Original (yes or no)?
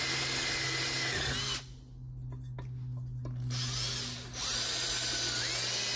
yes